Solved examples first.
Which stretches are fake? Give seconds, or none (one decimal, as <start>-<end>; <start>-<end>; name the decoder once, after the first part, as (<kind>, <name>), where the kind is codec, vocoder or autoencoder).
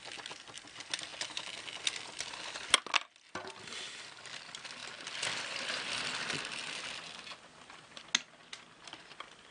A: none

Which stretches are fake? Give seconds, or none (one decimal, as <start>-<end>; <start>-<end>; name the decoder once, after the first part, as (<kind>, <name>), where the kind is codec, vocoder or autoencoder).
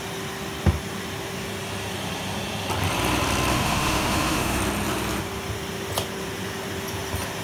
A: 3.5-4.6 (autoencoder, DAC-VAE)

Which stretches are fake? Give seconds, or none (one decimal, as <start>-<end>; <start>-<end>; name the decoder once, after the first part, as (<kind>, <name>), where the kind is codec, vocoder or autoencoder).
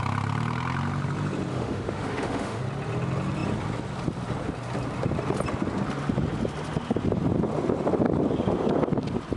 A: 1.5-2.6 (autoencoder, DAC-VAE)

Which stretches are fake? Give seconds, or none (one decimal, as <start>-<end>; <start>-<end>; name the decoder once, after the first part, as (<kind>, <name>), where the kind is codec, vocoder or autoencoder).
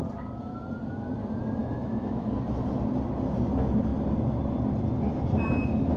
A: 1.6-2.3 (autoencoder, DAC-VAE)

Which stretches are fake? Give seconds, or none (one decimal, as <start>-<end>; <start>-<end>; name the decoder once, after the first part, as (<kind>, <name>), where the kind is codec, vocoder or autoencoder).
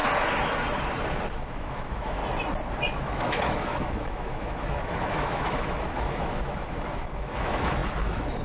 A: 1.3-2.2 (autoencoder, DAC-VAE); 3.0-8.4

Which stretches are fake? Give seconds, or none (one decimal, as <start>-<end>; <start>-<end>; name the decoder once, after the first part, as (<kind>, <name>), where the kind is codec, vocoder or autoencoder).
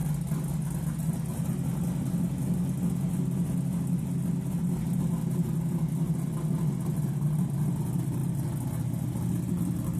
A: none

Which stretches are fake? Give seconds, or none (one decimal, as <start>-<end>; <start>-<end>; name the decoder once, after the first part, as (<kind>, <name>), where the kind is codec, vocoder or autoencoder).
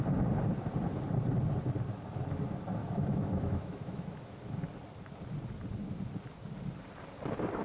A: 2.8-4.5 (autoencoder, DAC-VAE)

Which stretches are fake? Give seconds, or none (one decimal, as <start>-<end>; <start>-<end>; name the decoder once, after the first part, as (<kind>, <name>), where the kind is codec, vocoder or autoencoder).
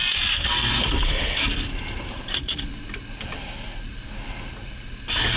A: none